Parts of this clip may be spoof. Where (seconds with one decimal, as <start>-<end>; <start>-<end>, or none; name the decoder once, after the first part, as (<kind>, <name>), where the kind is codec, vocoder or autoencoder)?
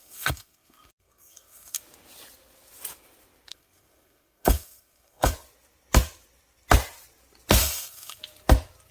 0.0-1.8 (codec, SNAC); 3.5-5.3; 7.6-8.2